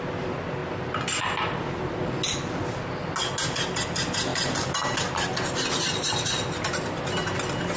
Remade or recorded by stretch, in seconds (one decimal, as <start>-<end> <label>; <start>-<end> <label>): 0.0-7.8 recorded